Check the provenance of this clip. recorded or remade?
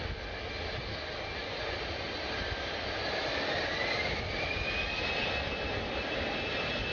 recorded